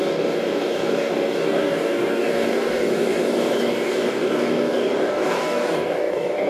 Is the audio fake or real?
fake